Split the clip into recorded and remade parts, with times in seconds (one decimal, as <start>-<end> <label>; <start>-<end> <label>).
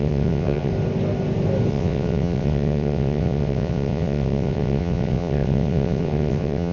0.0-0.7 remade; 0.7-1.7 recorded; 1.7-6.7 remade